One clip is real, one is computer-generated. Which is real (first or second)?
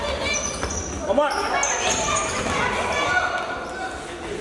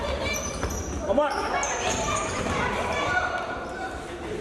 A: first